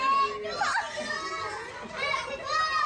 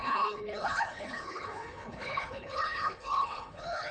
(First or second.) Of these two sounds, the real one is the first